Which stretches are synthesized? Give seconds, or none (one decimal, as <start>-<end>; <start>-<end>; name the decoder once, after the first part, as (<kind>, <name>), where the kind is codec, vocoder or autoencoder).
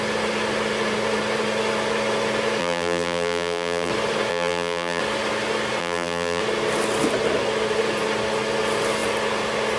2.6-3.9 (vocoder, BigVGAN v2); 4.3-5.0; 5.8-6.4